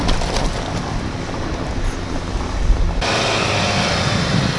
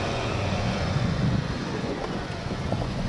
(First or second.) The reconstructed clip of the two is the second